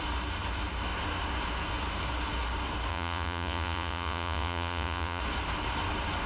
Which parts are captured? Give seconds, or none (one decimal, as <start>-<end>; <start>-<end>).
0.0-2.9; 5.2-6.3

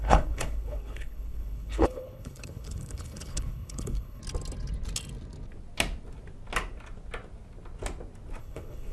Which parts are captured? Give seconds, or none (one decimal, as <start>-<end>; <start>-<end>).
4.2-8.4

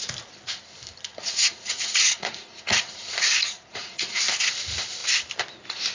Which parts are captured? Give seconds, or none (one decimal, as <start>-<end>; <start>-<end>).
0.0-1.1; 4.2-5.9

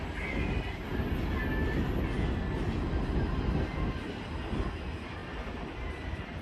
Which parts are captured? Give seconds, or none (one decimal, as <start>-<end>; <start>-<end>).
0.0-6.4

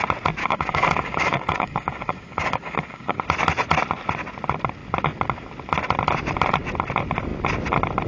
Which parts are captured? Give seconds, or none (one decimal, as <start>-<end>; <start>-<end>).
0.0-0.4; 3.2-8.1